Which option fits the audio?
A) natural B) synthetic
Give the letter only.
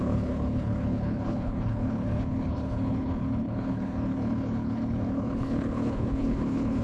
B